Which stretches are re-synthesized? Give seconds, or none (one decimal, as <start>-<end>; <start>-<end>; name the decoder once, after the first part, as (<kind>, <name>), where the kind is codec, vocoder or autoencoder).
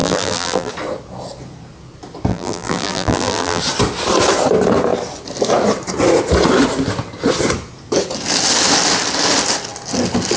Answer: 0.0-0.7 (vocoder, BigVGAN v2); 2.3-3.6